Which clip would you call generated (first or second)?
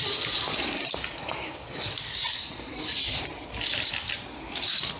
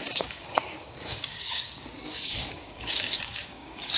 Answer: second